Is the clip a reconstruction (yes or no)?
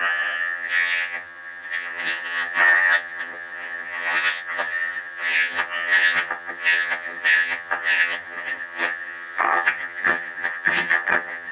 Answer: yes